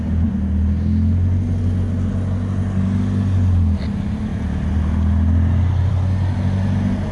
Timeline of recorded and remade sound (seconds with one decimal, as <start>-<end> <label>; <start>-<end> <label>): 0.0-7.1 recorded